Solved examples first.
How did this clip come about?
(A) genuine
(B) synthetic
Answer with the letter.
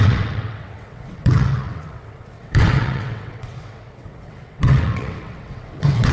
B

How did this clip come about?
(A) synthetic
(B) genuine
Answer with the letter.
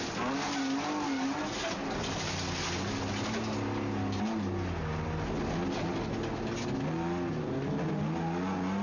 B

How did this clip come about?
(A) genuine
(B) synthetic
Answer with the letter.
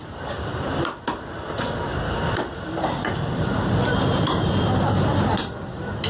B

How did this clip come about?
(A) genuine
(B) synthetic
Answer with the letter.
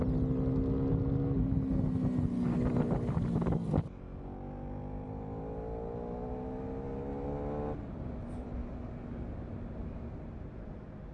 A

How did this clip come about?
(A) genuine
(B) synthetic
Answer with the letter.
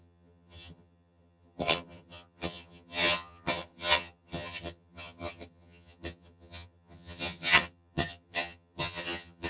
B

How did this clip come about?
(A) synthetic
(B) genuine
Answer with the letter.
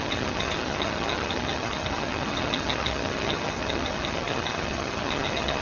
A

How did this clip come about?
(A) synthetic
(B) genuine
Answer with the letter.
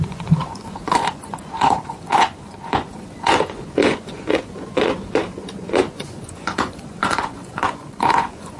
A